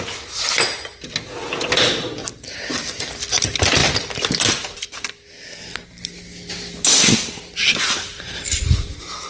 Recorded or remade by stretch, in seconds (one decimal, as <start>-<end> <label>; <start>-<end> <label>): 0.0-9.3 recorded